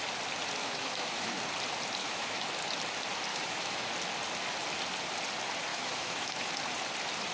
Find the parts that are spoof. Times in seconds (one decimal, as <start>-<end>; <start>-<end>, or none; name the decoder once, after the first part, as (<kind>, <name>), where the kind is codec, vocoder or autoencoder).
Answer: 0.6-1.4 (autoencoder, DAC-VAE); 2.0-2.5; 3.3-3.9; 5.7-6.5